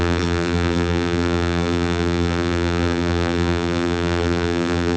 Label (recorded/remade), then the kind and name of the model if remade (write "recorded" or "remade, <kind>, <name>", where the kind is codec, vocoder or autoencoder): remade, vocoder, BigVGAN v2